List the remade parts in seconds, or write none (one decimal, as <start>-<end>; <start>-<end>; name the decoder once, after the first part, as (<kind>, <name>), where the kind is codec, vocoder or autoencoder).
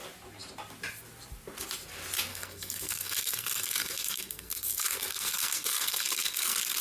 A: 2.3-6.8 (codec, SNAC)